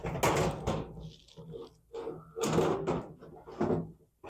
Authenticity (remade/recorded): recorded